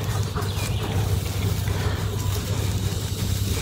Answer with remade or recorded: recorded